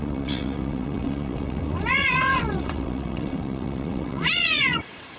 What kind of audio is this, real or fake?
fake